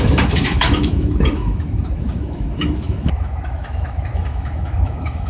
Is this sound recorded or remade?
remade